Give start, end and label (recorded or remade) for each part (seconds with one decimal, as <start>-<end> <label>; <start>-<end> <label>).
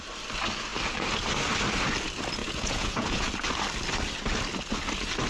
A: 0.0-2.4 recorded; 2.4-3.3 remade; 3.3-5.3 recorded